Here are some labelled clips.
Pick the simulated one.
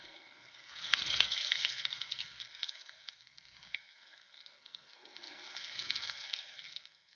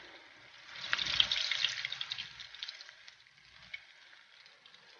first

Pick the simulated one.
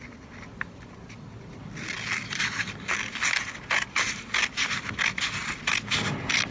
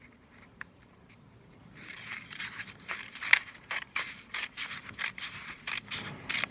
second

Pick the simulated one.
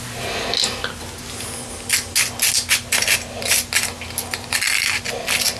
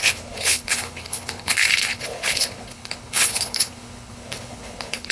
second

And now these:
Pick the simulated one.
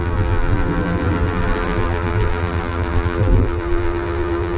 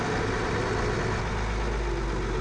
first